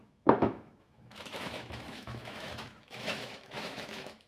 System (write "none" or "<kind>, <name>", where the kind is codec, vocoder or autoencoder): autoencoder, DAC-VAE